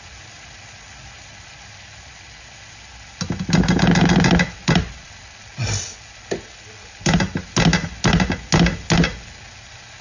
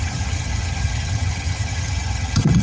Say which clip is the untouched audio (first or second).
first